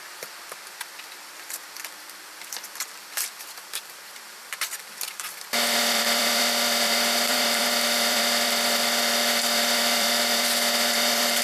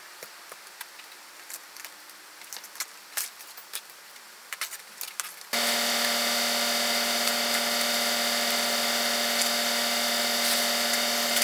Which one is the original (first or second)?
second